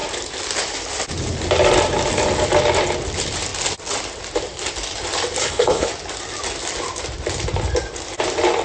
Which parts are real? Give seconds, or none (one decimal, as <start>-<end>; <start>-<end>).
0.0-5.4; 5.9-8.6